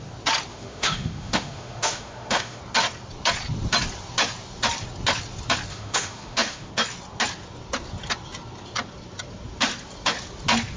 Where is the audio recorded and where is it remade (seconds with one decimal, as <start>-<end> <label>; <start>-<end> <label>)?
0.0-0.5 recorded; 0.5-2.6 remade; 2.6-5.7 recorded; 5.7-6.7 remade; 6.7-10.8 recorded

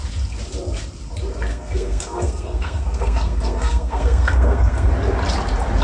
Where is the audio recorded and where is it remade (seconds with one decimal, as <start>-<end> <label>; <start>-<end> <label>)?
0.0-1.5 recorded; 1.5-4.9 remade; 4.9-5.8 recorded

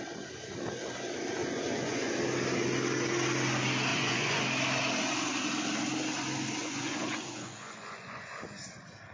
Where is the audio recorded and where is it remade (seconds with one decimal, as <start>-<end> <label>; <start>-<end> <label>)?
0.0-1.4 recorded; 1.4-2.1 remade; 2.1-3.9 recorded; 3.9-4.4 remade; 4.4-6.6 recorded; 6.6-8.4 remade; 8.4-9.1 recorded